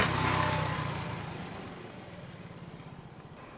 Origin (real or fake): real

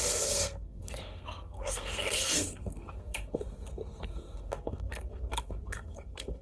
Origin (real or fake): fake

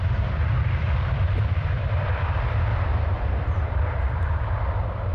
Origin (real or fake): fake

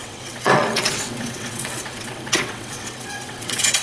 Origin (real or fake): fake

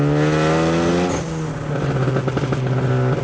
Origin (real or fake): real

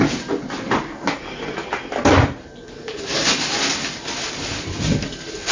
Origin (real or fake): real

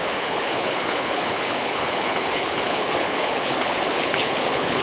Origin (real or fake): fake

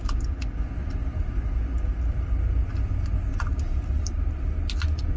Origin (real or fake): real